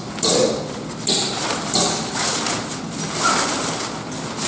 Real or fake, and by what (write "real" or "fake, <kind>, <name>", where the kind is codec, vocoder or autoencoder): real